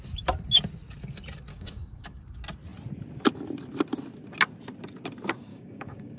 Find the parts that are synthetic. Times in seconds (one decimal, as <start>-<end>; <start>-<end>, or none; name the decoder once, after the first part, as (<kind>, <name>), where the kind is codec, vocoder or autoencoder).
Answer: 1.5-2.2 (codec, DAC); 5.5-6.2